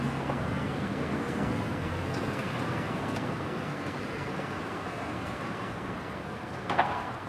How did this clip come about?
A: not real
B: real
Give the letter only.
A